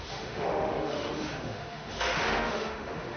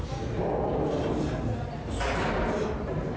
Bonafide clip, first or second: second